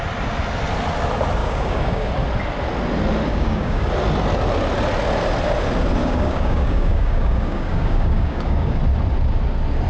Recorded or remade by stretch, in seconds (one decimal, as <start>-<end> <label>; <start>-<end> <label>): 0.0-1.4 recorded; 1.4-2.1 remade; 2.1-3.3 recorded; 3.3-3.9 remade; 3.9-6.0 recorded; 6.0-8.8 remade; 8.8-9.9 recorded

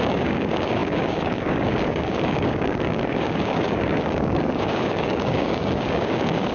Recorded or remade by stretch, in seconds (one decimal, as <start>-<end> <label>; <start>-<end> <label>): 0.0-6.5 remade

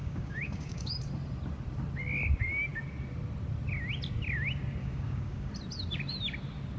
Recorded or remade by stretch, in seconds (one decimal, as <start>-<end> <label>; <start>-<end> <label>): 0.0-1.0 remade; 1.0-4.8 recorded; 4.8-5.5 remade; 5.5-6.8 recorded

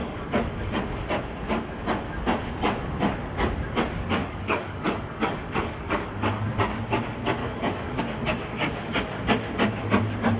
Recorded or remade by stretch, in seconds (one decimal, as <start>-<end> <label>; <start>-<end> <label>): 0.0-0.8 remade; 0.8-4.2 recorded; 4.2-6.1 remade; 6.1-7.4 recorded; 7.4-8.0 remade; 8.0-10.4 recorded

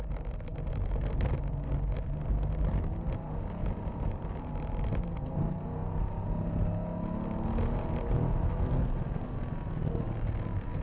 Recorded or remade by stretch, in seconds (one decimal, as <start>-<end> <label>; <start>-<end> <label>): 0.0-10.8 recorded

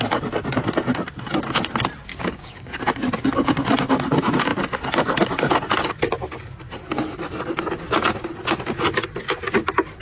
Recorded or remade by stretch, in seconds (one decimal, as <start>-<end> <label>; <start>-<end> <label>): 0.0-2.1 recorded; 2.1-2.8 remade; 2.8-10.0 recorded